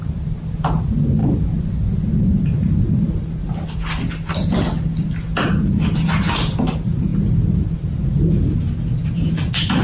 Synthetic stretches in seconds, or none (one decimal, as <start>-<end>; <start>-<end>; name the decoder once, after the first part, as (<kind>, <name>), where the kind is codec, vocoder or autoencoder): none